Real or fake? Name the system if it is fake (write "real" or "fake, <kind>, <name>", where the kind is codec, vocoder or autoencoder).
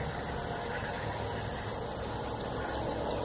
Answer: real